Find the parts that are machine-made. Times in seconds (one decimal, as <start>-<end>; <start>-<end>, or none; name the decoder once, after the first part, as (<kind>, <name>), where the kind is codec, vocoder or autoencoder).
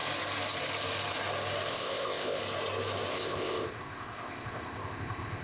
1.7-2.4 (codec, ZipCodec); 3.1-5.4